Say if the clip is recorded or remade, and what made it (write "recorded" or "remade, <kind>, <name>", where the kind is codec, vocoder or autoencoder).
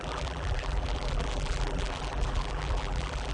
remade, vocoder, BigVGAN v2